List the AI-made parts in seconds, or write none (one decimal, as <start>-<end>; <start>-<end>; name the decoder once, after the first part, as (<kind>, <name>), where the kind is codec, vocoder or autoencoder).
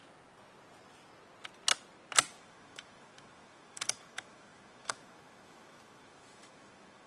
2.3-7.1 (autoencoder, DAC-VAE)